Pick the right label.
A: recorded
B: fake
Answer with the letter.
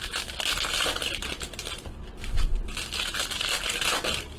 A